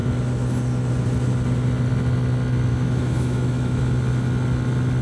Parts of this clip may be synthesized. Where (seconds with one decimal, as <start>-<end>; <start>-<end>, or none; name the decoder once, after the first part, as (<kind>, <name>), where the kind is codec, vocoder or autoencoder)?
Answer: 2.7-3.8 (autoencoder, DAC-VAE)